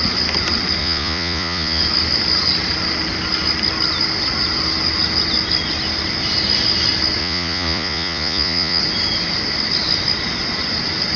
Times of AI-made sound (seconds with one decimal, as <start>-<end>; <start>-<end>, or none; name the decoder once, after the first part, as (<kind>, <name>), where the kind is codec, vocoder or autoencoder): 0.8-1.8 (vocoder, Vocos); 7.2-8.8